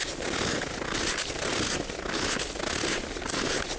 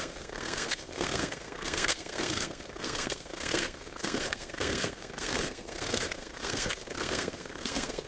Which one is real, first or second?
first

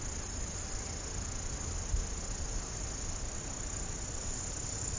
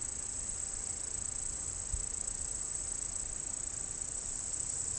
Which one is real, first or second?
first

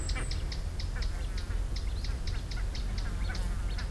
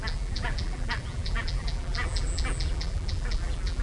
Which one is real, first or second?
first